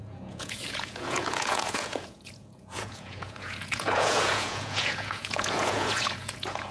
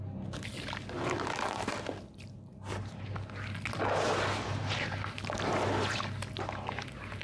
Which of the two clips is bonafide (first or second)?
second